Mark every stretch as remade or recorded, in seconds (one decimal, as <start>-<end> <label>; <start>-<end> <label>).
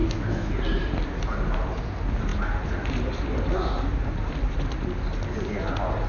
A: 0.0-0.5 remade; 0.5-6.1 recorded